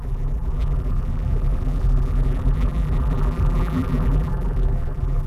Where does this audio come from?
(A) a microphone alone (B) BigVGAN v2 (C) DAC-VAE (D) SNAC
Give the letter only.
B